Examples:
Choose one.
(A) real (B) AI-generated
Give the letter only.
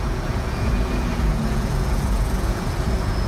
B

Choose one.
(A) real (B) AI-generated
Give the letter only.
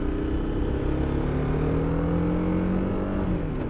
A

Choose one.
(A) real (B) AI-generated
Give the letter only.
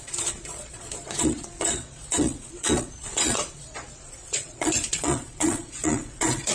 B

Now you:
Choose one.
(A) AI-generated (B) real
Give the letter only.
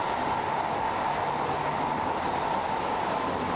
B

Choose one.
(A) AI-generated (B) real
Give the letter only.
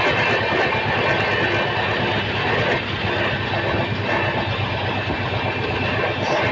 B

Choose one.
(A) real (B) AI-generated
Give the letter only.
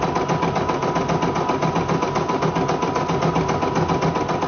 A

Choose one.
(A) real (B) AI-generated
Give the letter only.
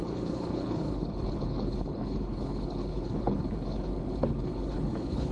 B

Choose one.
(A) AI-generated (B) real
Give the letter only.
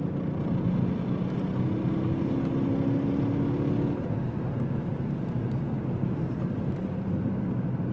B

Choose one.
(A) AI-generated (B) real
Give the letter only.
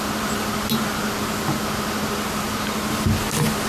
B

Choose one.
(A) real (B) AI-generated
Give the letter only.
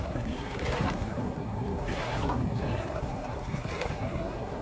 B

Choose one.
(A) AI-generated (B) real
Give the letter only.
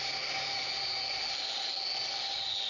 B